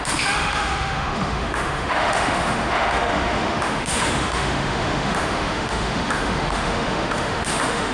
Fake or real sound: fake